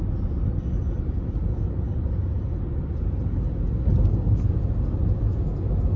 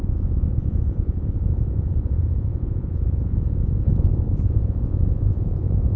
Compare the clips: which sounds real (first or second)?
first